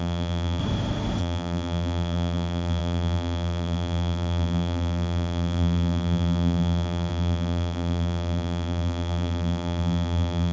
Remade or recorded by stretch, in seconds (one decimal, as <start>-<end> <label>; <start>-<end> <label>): 0.0-0.6 remade; 0.6-1.2 recorded; 1.2-10.5 remade